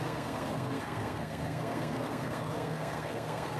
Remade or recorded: remade